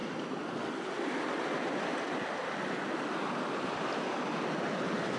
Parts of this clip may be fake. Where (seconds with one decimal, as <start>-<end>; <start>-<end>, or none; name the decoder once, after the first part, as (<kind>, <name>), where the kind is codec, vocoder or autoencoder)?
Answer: none